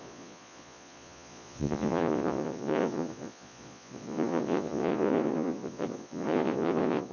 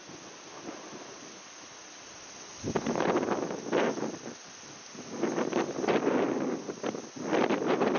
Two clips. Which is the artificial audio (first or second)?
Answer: first